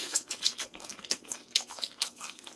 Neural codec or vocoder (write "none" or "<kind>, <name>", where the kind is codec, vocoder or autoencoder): codec, SNAC